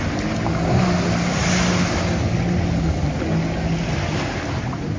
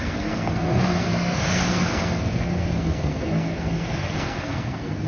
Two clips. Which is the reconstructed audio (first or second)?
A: second